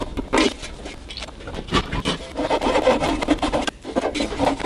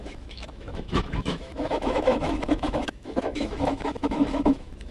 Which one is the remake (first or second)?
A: second